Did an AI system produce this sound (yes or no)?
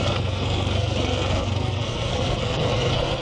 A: yes